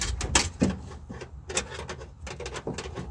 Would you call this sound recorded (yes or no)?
yes